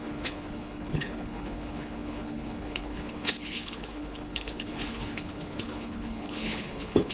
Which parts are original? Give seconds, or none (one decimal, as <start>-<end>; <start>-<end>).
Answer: none